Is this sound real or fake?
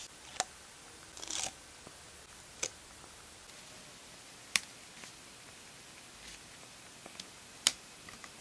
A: real